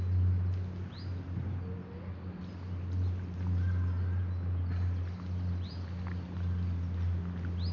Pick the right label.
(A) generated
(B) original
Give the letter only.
B